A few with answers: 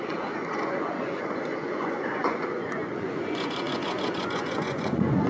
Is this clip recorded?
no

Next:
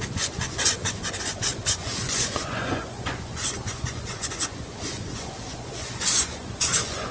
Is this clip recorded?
no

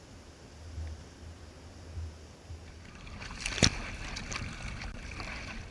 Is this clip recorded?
yes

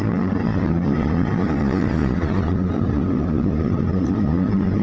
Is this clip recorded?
no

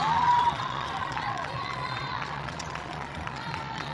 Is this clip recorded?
no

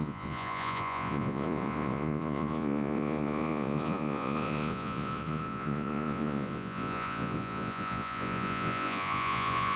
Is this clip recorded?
no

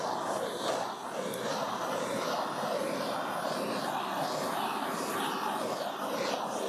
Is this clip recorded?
yes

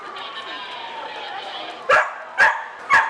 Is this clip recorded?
yes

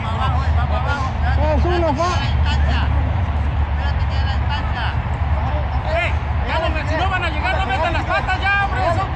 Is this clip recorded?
yes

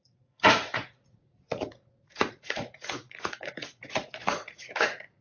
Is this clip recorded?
no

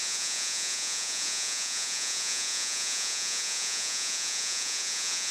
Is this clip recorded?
no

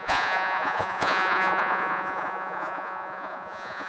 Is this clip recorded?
no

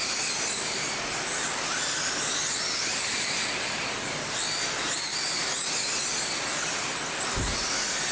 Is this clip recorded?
yes